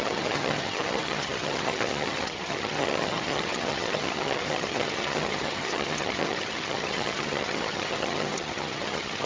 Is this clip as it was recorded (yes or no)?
no